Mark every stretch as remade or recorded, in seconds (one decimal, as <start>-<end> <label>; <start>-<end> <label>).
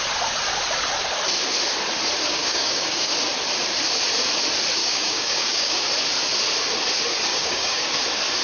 0.0-2.3 recorded; 2.3-3.1 remade; 3.1-4.8 recorded; 4.8-5.9 remade; 5.9-7.3 recorded; 7.3-7.9 remade; 7.9-8.4 recorded